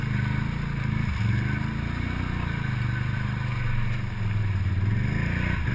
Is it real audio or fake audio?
real